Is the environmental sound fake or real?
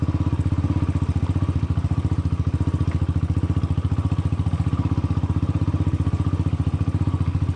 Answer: real